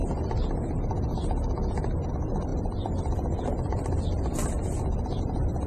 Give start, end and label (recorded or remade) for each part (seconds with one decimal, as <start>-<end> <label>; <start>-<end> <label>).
0.0-2.1 recorded; 2.1-5.7 remade